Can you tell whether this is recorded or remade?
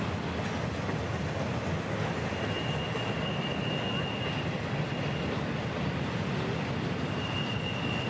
recorded